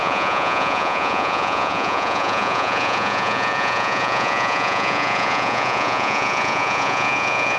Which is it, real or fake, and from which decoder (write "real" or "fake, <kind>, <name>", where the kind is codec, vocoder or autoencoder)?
fake, vocoder, Vocos